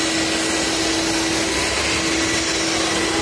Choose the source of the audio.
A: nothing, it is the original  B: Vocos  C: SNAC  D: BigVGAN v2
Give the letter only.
A